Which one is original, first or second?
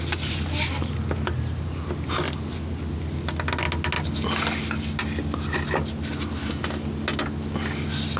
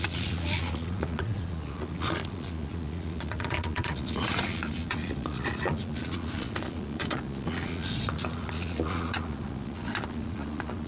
first